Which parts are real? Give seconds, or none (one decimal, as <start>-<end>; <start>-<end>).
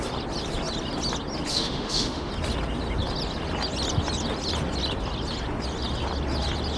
0.0-1.5; 2.3-6.8